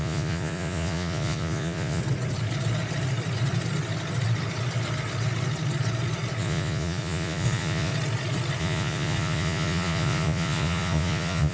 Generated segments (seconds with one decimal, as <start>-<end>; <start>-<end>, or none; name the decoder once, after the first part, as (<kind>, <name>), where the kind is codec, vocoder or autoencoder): 0.0-2.0 (vocoder, Vocos); 6.4-7.9; 8.6-11.5